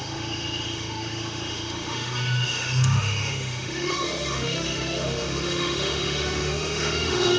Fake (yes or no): yes